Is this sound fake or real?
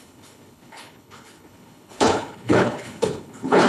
fake